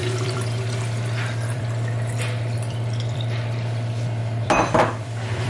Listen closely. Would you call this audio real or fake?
fake